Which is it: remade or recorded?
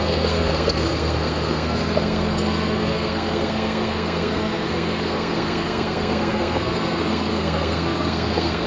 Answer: remade